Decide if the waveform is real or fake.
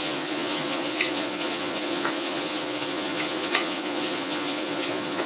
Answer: fake